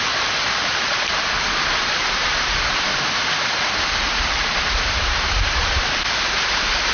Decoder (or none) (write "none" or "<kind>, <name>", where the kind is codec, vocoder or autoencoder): vocoder, BigVGAN v2